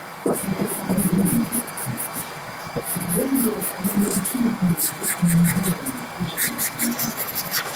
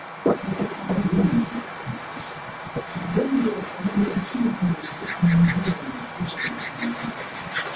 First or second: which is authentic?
second